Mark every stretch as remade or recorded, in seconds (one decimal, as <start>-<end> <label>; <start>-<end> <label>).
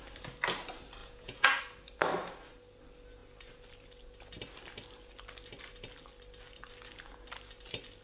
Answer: 0.0-1.0 recorded; 1.0-1.6 remade; 1.6-8.0 recorded